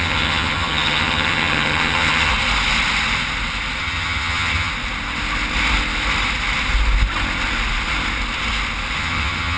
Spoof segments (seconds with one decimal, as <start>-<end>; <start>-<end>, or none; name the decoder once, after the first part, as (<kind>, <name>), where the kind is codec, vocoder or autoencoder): 0.0-2.3 (vocoder, HiFi-GAN); 3.8-4.7; 9.0-9.6